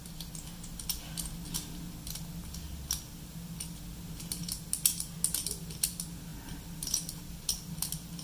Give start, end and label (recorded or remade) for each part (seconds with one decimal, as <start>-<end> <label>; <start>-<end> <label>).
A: 0.0-8.2 recorded